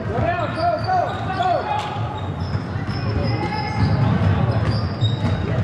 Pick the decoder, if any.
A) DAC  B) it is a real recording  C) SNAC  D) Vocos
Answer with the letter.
B